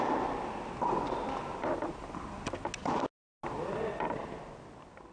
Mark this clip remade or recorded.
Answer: recorded